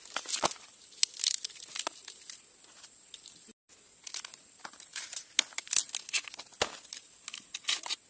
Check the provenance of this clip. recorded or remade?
recorded